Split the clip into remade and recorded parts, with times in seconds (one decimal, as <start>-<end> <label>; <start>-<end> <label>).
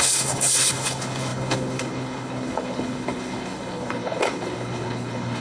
0.0-5.4 remade